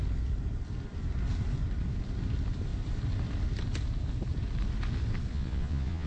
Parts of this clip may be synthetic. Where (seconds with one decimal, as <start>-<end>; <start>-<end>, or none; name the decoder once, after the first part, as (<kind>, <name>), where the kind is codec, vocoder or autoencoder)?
5.3-6.1 (vocoder, Vocos)